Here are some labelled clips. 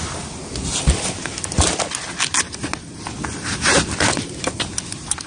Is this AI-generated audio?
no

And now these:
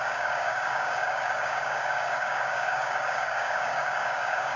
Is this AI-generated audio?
yes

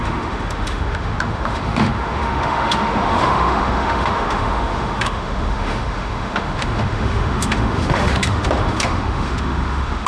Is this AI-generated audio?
yes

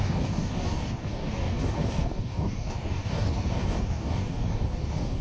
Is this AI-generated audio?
yes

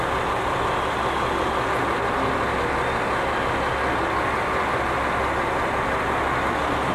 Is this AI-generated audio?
no